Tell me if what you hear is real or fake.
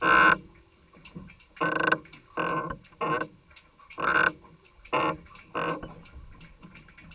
real